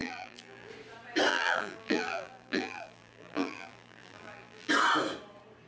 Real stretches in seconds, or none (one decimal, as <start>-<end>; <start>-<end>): 0.7-1.3; 4.7-5.7